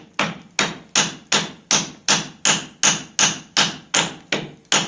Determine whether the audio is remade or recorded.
recorded